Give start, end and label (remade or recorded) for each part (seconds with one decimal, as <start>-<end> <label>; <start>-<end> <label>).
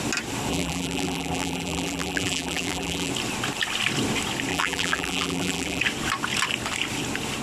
0.0-0.5 recorded; 0.5-3.1 remade; 3.1-4.5 recorded; 4.5-5.8 remade; 5.8-7.4 recorded